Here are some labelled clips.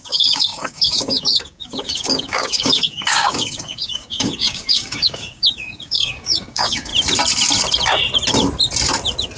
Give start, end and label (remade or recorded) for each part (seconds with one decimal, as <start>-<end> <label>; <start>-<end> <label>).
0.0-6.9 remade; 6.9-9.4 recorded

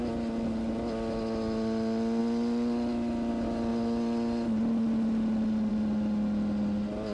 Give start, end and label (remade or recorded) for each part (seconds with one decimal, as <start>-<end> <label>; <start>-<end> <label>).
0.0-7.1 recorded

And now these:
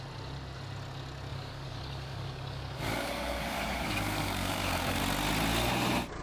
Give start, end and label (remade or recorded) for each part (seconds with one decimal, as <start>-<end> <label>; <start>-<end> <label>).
0.0-1.3 recorded; 1.3-5.0 remade; 5.0-6.2 recorded

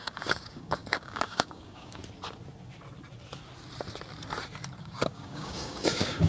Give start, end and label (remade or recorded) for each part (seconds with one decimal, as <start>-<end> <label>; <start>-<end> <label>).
0.0-2.0 remade; 2.0-4.8 recorded; 4.8-6.3 remade

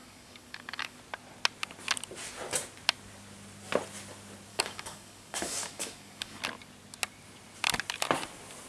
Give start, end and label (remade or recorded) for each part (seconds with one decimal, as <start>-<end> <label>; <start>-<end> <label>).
0.0-1.0 remade; 1.0-4.5 recorded; 4.5-6.4 remade; 6.4-8.7 recorded

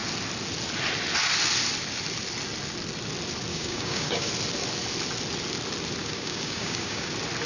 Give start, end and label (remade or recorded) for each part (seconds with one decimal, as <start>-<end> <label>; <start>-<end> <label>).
0.0-3.5 recorded; 3.5-4.3 remade; 4.3-6.0 recorded; 6.0-7.1 remade; 7.1-7.5 recorded

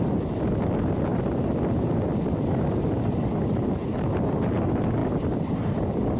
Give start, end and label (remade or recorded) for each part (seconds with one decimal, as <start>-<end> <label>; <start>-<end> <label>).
0.0-6.2 recorded